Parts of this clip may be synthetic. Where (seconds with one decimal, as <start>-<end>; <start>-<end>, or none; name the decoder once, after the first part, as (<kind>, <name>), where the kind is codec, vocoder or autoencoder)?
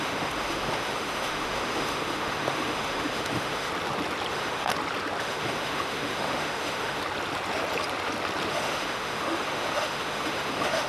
0.0-3.7 (autoencoder, DAC-VAE); 4.3-4.7; 5.2-7.0; 8.5-10.9